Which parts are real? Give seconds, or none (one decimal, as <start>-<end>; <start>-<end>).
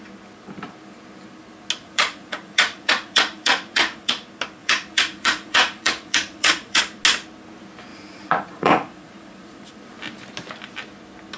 0.0-1.8; 4.1-4.6; 6.8-7.9; 9.7-11.4